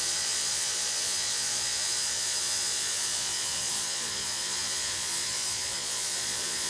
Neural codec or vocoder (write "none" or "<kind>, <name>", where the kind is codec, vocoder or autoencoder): vocoder, Vocos